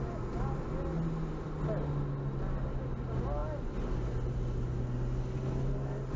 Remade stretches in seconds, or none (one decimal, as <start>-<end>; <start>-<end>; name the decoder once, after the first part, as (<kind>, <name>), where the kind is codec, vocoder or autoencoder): none